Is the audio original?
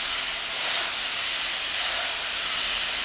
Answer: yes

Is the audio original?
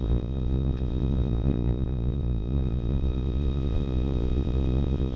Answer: no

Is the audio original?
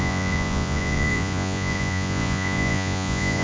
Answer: no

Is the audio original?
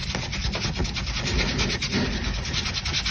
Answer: yes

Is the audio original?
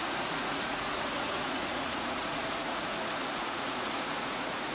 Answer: no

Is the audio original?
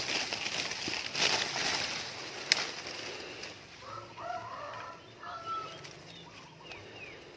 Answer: yes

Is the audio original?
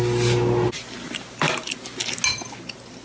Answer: yes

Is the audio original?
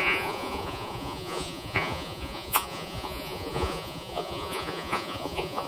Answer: no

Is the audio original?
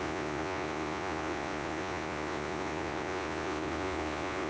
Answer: no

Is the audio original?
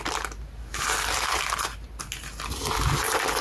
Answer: yes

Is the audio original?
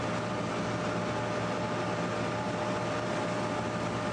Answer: yes